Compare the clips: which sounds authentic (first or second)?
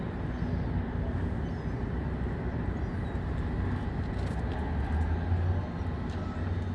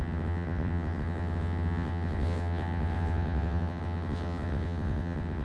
first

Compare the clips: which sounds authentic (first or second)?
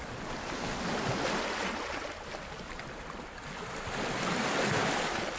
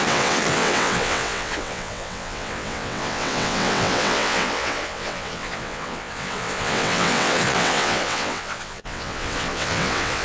first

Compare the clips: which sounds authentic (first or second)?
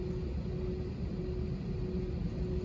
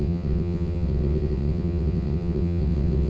first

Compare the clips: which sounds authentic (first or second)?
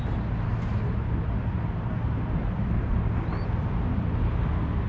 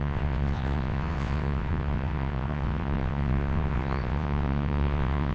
first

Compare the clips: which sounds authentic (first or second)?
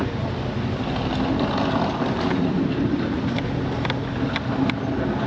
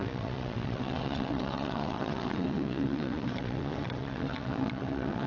first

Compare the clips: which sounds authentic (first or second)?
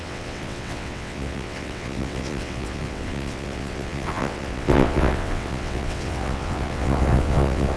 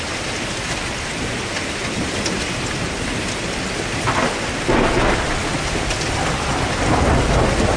second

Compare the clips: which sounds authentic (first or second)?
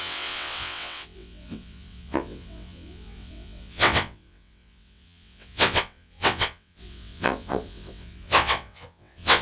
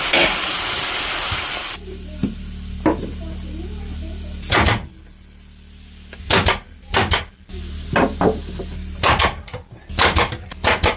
second